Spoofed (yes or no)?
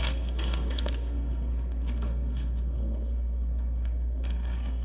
yes